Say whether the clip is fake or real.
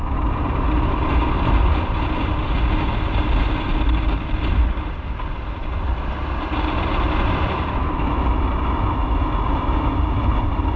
real